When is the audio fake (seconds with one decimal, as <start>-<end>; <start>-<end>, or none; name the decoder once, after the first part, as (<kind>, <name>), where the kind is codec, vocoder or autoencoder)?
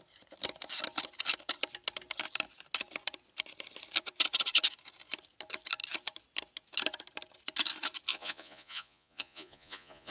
8.1-10.1 (vocoder, Vocos)